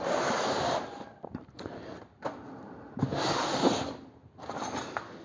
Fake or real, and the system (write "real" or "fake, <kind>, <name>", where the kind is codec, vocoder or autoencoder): real